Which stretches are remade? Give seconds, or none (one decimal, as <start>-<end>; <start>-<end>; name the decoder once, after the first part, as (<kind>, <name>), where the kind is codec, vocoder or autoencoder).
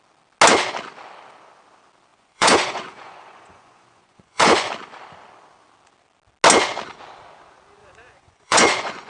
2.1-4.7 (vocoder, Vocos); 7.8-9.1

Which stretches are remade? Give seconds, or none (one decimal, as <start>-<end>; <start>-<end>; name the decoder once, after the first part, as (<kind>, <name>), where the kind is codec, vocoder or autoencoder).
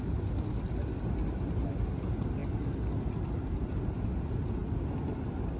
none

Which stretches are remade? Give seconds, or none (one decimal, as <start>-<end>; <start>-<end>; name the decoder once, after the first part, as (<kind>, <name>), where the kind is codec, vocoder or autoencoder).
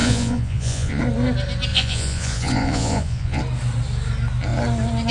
0.0-1.0 (vocoder, Vocos); 1.7-3.4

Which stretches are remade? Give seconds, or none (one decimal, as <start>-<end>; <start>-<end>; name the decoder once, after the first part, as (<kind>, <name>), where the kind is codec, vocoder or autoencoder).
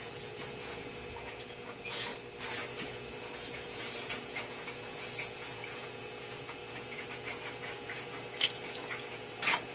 0.0-2.1 (vocoder, Vocos); 2.7-9.7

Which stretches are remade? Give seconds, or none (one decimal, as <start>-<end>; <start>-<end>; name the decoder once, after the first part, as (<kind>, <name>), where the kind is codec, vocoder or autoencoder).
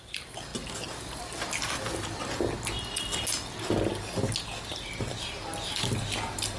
none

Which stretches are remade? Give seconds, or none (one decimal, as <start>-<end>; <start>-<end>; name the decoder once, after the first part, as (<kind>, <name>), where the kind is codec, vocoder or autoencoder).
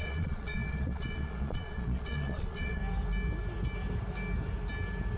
0.0-2.8 (vocoder, Vocos)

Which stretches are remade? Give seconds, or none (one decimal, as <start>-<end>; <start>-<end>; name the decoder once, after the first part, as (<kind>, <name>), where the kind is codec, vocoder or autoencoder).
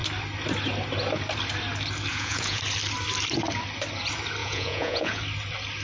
2.1-2.6 (vocoder, Vocos); 4.4-5.2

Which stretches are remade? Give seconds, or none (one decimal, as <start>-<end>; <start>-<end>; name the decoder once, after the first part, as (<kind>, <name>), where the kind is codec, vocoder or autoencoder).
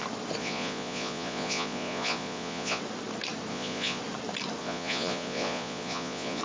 0.4-2.8 (vocoder, Vocos); 3.5-4.0; 4.6-6.4